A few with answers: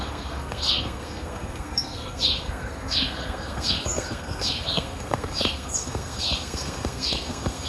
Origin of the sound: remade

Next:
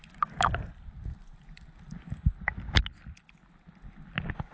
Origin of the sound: recorded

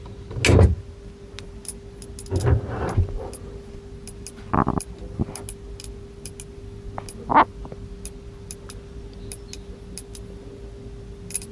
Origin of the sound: recorded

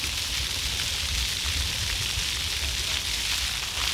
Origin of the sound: recorded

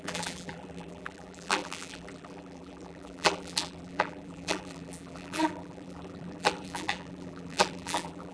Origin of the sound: remade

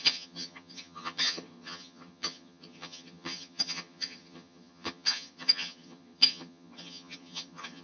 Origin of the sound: remade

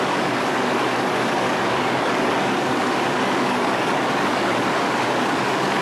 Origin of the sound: remade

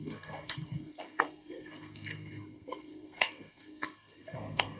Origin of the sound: remade